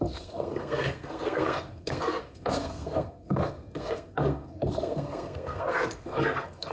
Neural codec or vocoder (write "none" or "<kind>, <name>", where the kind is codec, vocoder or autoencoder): codec, SNAC